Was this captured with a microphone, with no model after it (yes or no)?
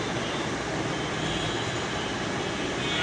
yes